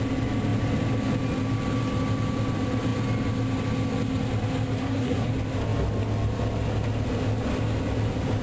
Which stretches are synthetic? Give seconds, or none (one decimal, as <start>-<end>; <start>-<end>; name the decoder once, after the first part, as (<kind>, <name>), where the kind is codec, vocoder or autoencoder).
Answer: 4.8-5.3 (codec, SNAC)